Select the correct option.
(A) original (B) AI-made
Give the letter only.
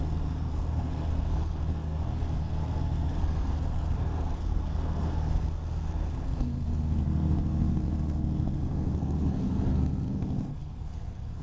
B